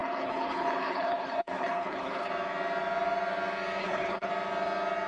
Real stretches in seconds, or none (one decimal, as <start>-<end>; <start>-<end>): 2.3-3.8; 4.3-5.1